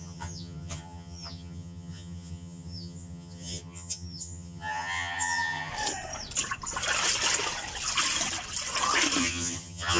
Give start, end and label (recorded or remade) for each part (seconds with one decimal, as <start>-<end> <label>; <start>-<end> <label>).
0.0-5.7 remade; 5.7-9.2 recorded; 9.2-10.0 remade